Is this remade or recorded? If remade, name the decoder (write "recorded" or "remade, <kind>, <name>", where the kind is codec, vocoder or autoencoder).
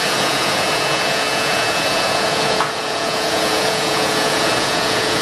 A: remade, vocoder, Vocos